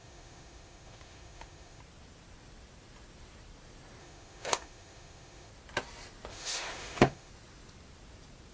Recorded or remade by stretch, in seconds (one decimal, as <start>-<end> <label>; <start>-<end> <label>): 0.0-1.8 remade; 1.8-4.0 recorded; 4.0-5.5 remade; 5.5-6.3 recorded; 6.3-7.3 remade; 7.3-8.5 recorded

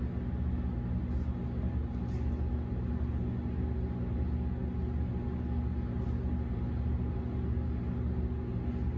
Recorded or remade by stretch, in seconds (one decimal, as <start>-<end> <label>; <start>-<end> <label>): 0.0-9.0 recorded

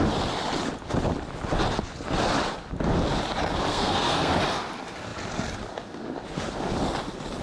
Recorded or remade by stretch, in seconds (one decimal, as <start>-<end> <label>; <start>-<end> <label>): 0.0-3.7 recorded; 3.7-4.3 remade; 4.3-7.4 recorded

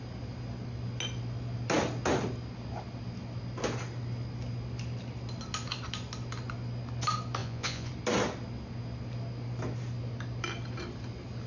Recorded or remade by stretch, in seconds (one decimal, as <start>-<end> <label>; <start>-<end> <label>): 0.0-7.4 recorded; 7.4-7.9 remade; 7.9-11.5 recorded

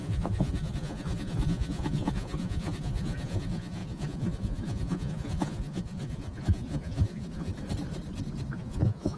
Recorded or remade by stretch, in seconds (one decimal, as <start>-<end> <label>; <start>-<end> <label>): 0.0-7.5 remade; 7.5-8.5 recorded; 8.5-9.2 remade

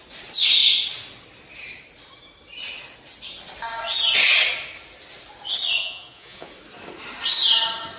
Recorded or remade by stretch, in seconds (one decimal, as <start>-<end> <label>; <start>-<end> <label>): 0.0-5.8 recorded; 5.8-6.5 remade; 6.5-8.0 recorded